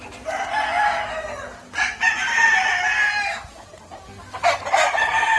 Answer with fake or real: real